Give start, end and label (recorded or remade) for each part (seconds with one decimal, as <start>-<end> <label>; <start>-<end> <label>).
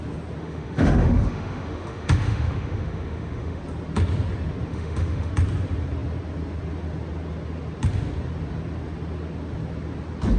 0.0-0.4 recorded; 0.4-3.6 remade; 3.6-4.7 recorded; 4.7-5.3 remade; 5.3-10.4 recorded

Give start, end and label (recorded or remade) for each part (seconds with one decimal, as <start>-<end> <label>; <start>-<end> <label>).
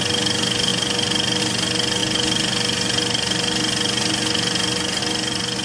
0.0-5.6 recorded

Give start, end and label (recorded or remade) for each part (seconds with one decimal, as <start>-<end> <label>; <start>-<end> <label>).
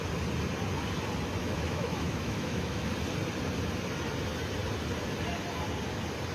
0.0-1.4 recorded; 1.4-2.9 remade; 2.9-6.3 recorded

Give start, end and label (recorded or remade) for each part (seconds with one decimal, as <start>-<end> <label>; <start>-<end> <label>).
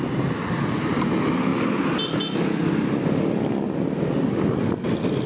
0.0-5.3 recorded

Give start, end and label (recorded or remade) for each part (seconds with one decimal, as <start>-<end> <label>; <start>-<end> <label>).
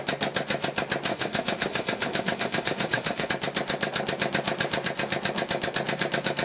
0.0-1.1 recorded; 1.1-3.3 remade; 3.3-6.4 recorded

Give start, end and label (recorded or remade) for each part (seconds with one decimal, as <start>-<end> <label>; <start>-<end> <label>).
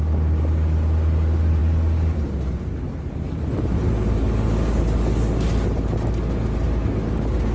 0.0-7.5 recorded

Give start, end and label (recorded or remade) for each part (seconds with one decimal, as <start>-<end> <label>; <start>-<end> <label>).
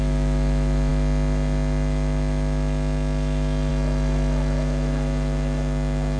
0.0-6.2 remade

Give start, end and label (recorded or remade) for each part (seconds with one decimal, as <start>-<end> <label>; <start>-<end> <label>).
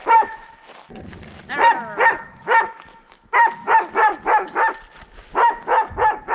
0.0-0.9 remade; 0.9-2.3 recorded; 2.3-3.5 remade; 3.5-6.3 recorded